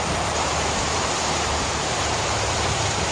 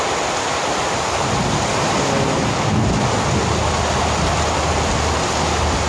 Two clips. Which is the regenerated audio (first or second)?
first